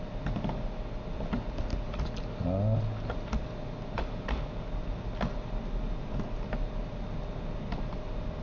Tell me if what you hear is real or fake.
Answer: real